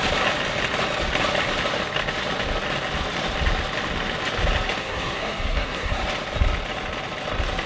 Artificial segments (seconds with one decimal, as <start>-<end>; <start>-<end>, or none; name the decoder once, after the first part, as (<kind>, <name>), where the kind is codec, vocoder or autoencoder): 4.8-6.0 (codec, SNAC)